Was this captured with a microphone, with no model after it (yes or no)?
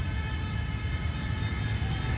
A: yes